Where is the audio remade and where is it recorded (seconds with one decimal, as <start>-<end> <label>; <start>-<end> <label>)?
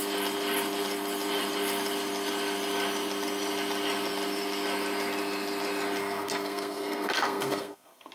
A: 0.0-6.0 recorded; 6.0-8.1 remade